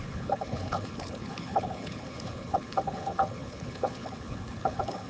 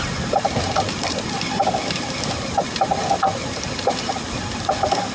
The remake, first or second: first